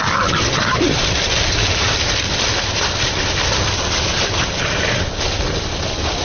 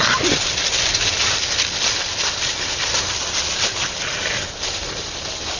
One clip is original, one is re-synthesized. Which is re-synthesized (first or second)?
first